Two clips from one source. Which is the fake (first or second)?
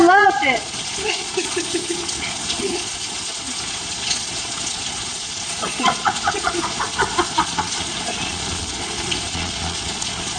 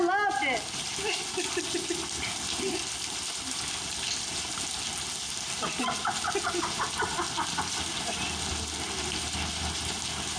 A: first